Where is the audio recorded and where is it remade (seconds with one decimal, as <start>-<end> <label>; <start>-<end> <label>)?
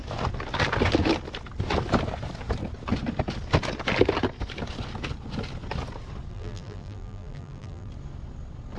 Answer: 0.0-6.3 recorded; 6.3-7.9 remade; 7.9-8.8 recorded